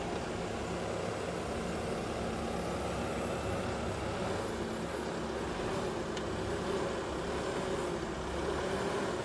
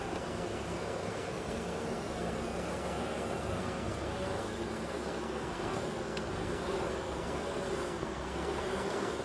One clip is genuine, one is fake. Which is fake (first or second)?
second